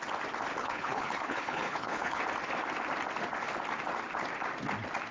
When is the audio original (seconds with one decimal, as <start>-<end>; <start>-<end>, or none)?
0.0-0.6; 2.2-5.1